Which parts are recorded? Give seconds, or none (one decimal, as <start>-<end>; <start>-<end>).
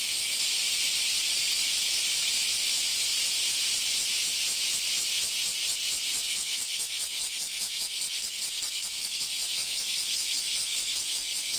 0.0-6.2